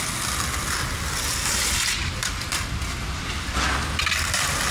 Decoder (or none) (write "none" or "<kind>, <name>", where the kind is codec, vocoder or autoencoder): none